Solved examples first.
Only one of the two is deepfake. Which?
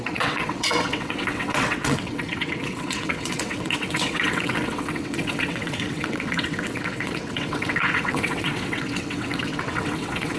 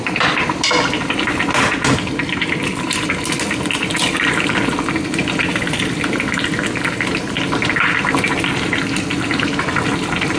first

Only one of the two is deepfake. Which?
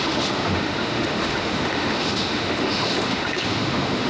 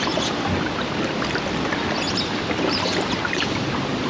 first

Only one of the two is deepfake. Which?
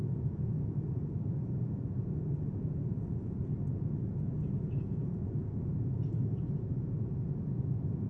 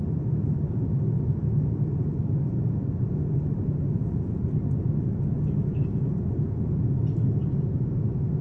first